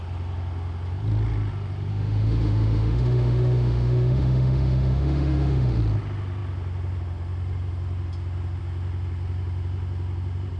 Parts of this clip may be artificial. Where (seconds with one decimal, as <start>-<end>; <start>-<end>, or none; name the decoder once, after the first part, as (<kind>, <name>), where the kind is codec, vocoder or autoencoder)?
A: 1.9-5.8 (autoencoder, DAC-VAE)